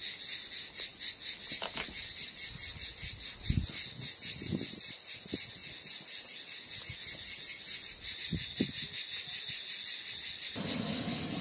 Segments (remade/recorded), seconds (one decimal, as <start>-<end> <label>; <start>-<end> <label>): 0.0-11.4 recorded